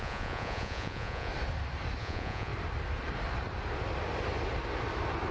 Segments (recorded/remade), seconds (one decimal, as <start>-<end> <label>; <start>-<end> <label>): 0.0-1.3 remade; 1.3-2.0 recorded; 2.0-2.5 remade; 2.5-5.3 recorded